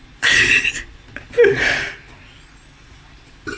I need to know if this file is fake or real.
real